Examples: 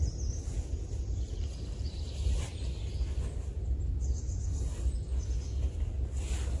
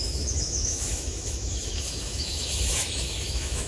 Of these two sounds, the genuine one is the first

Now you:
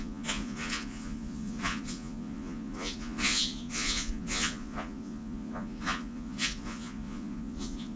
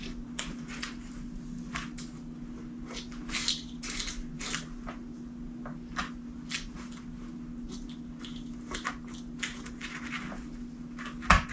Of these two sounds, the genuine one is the second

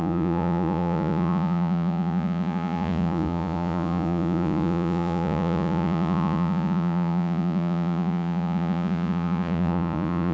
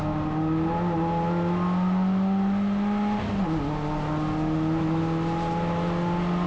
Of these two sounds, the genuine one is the second